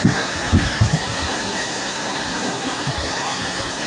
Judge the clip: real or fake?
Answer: fake